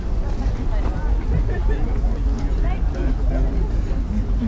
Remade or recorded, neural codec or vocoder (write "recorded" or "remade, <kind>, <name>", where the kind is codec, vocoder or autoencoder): recorded